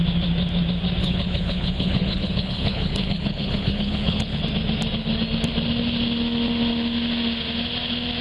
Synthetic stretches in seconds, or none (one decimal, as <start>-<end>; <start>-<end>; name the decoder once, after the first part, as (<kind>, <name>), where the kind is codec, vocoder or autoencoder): 1.0-4.4 (codec, HILCodec)